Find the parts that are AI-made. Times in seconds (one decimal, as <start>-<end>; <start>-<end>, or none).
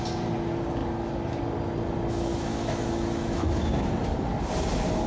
2.3-3.9